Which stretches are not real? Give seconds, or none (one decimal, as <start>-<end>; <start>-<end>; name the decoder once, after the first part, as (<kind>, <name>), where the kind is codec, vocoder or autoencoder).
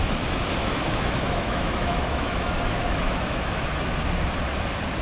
0.6-3.6 (autoencoder, DAC-VAE)